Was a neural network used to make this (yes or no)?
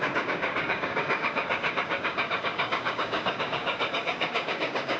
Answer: yes